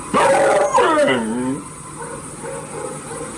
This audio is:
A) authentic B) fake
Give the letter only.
A